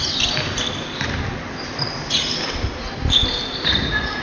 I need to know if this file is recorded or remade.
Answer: recorded